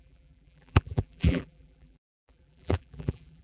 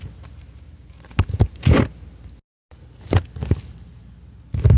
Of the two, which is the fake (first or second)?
first